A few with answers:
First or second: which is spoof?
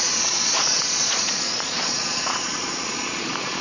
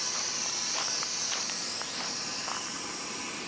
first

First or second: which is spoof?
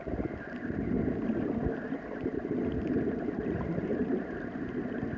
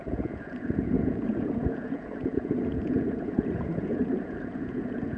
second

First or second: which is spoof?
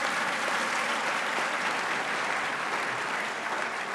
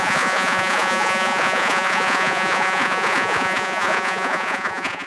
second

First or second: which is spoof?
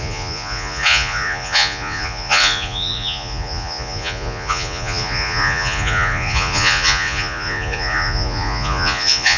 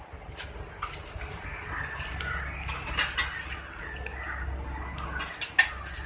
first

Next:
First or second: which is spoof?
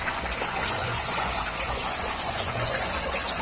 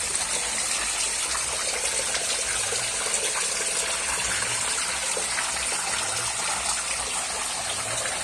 first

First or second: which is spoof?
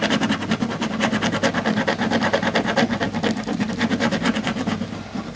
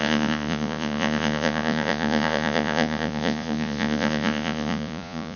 second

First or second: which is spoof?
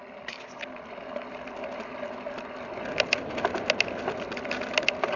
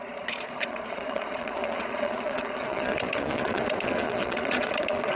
second